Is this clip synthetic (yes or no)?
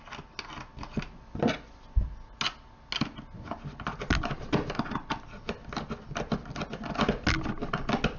no